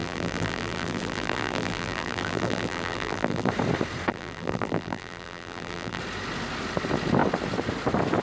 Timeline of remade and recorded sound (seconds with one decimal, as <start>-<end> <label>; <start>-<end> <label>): 0.0-3.5 remade; 3.5-4.1 recorded; 4.1-6.0 remade; 6.0-8.2 recorded